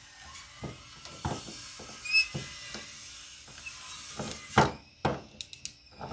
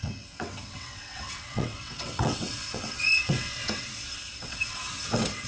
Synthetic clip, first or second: second